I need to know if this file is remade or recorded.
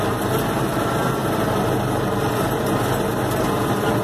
recorded